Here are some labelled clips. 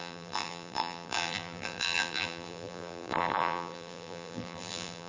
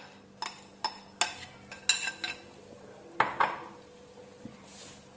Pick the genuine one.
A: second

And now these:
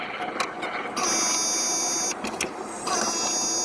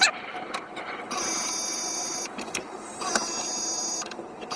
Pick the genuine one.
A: first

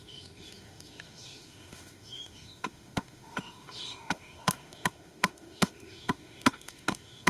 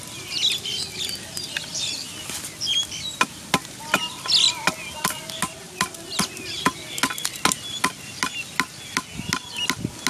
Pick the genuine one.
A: second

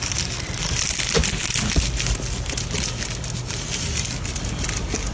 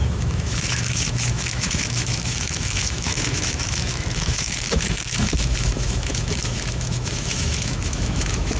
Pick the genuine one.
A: first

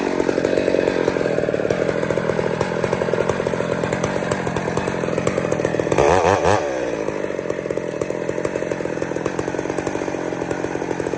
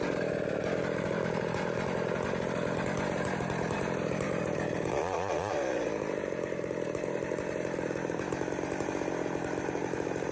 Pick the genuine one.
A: first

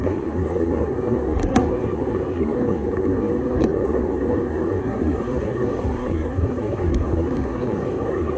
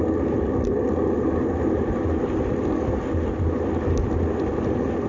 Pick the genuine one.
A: second